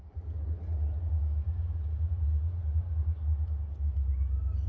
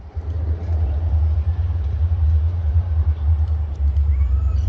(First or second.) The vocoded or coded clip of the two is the second